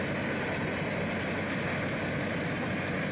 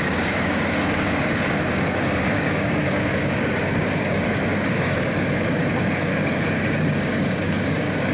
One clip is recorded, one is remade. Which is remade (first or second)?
second